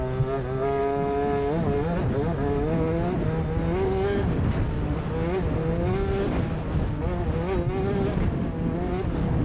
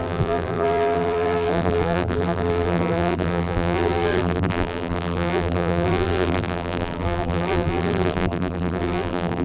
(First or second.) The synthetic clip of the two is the second